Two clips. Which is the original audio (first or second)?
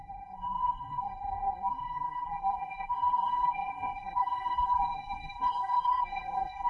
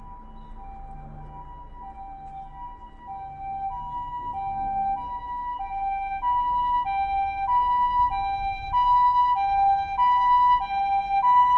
second